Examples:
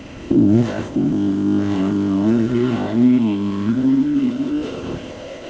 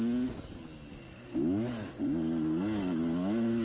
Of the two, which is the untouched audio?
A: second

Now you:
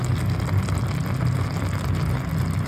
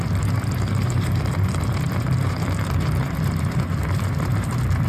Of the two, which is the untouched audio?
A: first